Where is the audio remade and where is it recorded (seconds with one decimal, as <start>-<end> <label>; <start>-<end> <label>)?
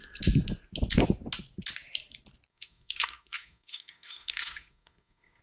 0.0-2.5 recorded; 2.5-5.4 remade